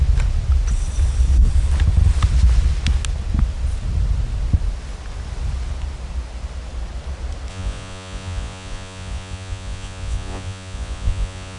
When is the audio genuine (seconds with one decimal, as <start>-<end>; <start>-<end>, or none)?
0.0-7.5